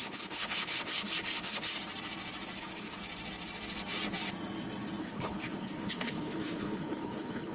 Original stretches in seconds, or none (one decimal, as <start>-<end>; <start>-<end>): 1.7-2.6; 3.0-5.0